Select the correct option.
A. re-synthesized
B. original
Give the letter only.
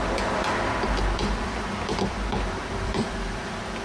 A